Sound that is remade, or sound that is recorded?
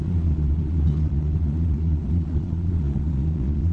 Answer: remade